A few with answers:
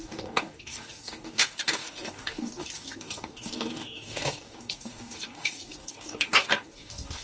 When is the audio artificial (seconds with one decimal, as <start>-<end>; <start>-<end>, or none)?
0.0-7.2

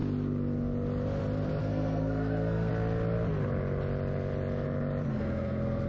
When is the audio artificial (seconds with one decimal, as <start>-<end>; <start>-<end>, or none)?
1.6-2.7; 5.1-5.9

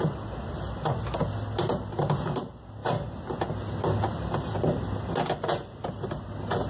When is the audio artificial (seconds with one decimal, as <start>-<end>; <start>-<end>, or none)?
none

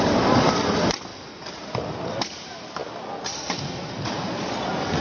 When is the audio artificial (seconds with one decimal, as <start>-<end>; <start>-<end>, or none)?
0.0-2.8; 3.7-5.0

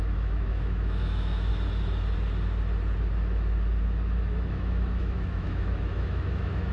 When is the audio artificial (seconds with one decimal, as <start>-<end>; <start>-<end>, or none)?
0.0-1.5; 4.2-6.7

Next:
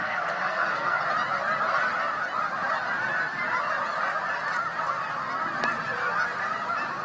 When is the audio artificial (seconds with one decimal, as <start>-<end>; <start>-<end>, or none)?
0.0-1.0

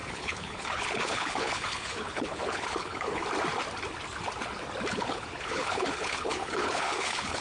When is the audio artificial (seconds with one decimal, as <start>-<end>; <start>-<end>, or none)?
0.0-3.2; 4.9-7.4